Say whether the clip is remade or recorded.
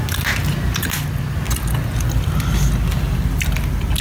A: recorded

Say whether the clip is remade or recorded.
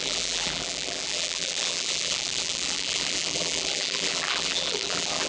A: remade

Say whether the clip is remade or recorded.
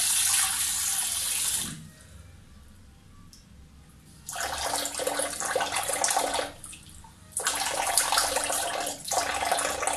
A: remade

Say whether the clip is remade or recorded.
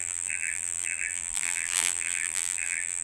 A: remade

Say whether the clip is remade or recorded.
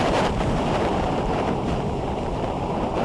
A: remade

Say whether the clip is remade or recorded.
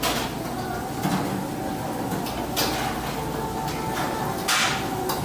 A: recorded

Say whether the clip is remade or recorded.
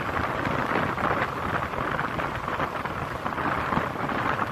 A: recorded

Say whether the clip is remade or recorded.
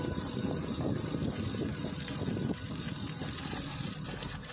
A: remade